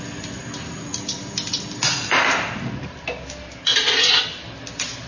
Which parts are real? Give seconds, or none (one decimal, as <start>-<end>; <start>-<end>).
0.0-5.1

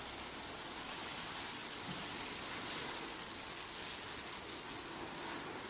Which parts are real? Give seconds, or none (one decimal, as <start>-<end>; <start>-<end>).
0.0-5.7

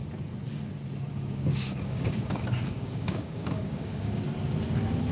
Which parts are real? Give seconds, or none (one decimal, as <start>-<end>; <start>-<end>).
0.0-1.1; 4.2-5.1

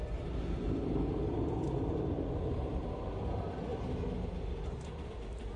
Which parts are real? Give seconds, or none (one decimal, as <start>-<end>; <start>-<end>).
0.0-5.6

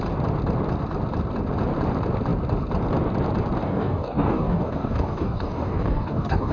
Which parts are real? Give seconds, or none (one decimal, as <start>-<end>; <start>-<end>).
0.0-3.6

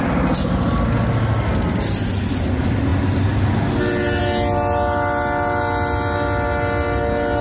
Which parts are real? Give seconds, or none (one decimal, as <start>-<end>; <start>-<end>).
0.0-7.4

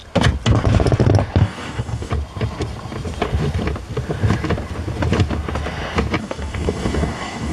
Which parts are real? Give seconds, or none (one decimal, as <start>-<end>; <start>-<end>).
0.0-1.4; 2.1-6.2

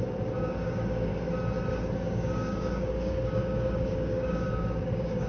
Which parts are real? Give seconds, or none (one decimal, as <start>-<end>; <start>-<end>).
1.1-1.7